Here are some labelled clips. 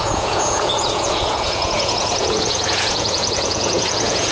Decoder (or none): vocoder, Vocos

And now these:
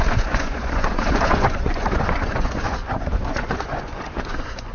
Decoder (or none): vocoder, Vocos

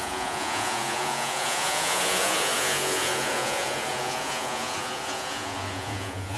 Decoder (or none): vocoder, Vocos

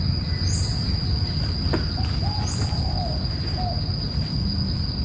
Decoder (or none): none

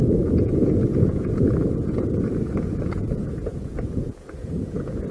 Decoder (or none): vocoder, Vocos